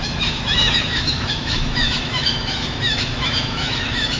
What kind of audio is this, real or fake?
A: fake